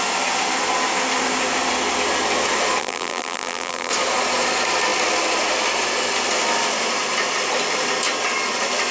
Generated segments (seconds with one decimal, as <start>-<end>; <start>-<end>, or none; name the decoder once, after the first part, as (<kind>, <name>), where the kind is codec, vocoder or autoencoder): 2.8-3.9 (vocoder, BigVGAN v2)